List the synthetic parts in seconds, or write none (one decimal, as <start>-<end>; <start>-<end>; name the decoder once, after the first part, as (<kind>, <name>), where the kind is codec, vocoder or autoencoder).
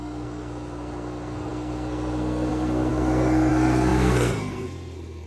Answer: 0.0-5.3 (codec, SNAC)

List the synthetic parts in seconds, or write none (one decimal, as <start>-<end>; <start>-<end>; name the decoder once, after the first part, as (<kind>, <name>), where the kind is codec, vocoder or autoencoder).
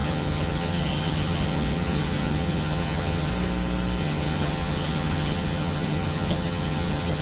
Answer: 0.0-3.3 (vocoder, HiFi-GAN); 4.0-7.2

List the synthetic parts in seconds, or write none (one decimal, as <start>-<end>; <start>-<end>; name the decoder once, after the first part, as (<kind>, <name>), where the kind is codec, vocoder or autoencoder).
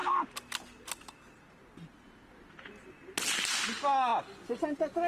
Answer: none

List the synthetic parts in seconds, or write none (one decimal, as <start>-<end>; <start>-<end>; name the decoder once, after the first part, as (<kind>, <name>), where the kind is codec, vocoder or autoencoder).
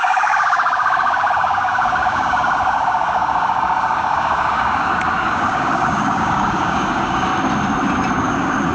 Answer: 0.0-7.3 (codec, DAC); 8.2-8.7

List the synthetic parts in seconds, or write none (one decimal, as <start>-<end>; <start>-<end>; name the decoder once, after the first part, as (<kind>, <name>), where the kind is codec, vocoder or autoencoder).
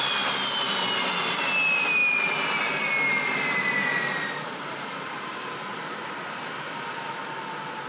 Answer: none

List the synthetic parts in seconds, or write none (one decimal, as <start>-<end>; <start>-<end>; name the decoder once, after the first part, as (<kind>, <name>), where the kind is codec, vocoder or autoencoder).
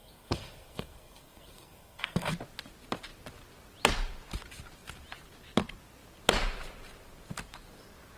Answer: 0.0-2.3 (codec, SNAC)